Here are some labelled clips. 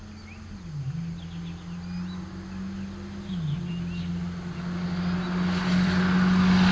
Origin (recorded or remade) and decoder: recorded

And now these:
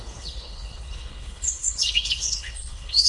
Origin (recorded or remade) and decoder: remade, codec, HILCodec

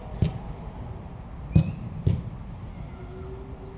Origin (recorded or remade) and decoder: recorded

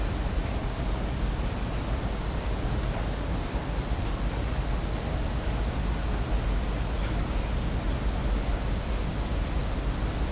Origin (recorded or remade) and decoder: recorded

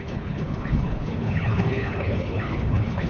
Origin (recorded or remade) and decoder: remade, codec, HILCodec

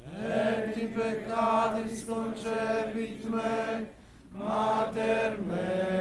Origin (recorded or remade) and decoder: recorded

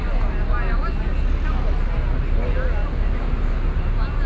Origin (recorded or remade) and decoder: recorded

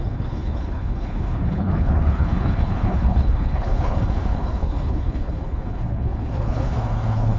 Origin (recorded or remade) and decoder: remade, codec, HILCodec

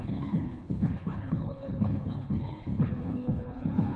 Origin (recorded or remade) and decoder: remade, codec, HILCodec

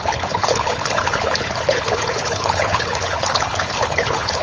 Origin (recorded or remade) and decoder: remade, codec, HILCodec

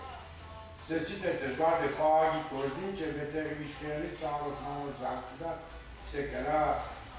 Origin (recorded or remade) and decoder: recorded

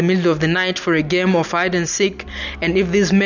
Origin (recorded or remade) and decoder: recorded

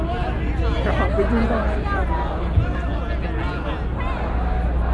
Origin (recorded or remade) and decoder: recorded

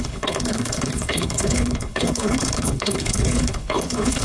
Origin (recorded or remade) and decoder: remade, codec, HILCodec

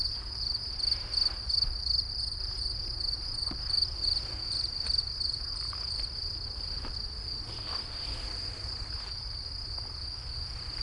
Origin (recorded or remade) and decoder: recorded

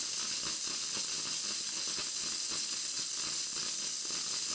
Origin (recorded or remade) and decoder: recorded